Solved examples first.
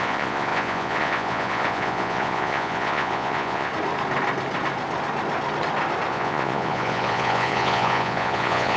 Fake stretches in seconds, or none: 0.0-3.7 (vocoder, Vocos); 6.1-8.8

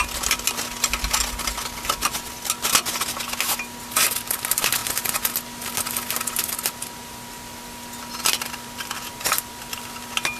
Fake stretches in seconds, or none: none

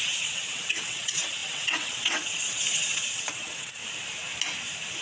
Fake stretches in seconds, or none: 0.0-3.8 (vocoder, WaveNeXt)

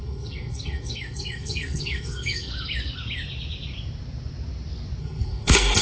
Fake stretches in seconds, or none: 0.0-2.5 (codec, SNAC); 5.0-5.8

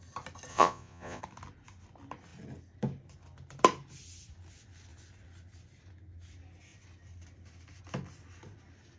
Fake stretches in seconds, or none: 0.5-1.2 (vocoder, Vocos)

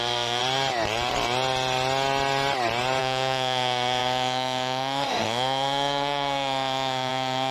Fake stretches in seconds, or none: 0.0-0.4 (autoencoder, DAC-VAE); 3.0-7.5

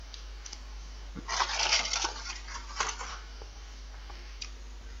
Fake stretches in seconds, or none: 0.0-1.1 (codec, DAC); 3.1-4.4

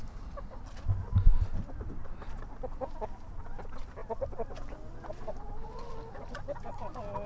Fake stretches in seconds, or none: none